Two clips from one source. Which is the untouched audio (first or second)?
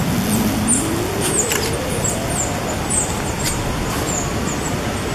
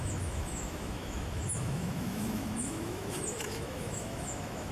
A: first